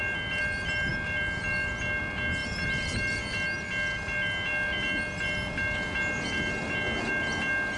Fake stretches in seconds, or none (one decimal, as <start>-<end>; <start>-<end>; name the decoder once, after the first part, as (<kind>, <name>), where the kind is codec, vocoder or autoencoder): none